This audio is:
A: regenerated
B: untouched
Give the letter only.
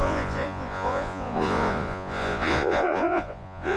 A